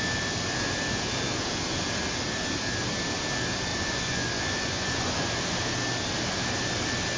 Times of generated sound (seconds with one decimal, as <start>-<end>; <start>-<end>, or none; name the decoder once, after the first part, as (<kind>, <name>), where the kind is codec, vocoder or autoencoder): 3.7-5.4 (vocoder, Vocos)